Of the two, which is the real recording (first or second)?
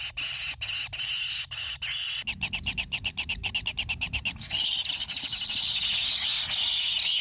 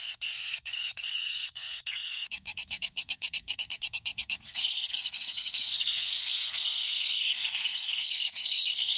first